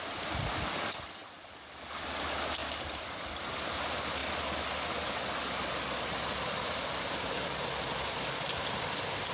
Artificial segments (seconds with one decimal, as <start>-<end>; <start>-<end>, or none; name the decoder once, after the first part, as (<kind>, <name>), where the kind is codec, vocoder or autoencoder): none